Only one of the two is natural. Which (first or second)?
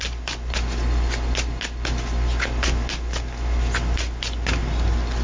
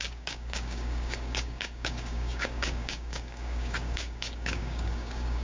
first